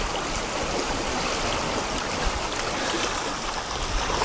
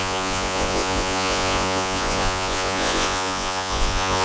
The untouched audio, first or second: first